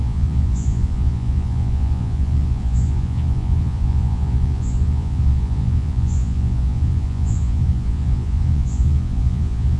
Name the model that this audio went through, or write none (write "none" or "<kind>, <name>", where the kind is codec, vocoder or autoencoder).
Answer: vocoder, Vocos